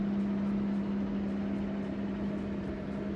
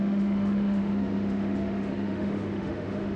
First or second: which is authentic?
first